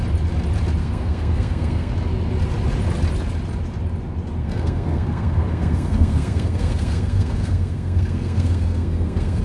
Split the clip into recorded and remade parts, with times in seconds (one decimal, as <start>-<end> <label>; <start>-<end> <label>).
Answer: 0.0-0.8 recorded; 0.8-1.9 remade; 1.9-4.4 recorded; 4.4-9.4 remade